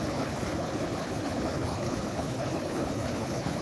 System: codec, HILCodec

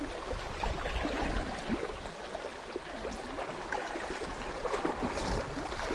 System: none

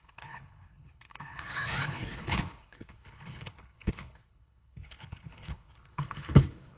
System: codec, HILCodec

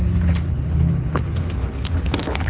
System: codec, HILCodec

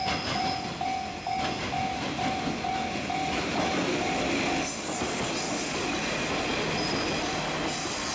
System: none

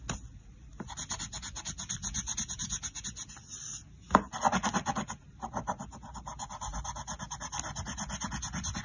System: none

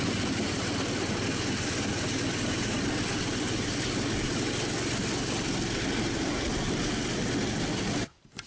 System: none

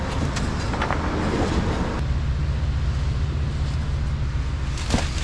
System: none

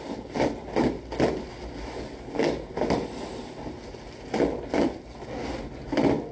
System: none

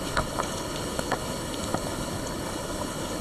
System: codec, HILCodec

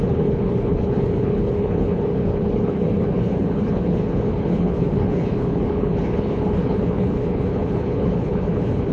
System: codec, HILCodec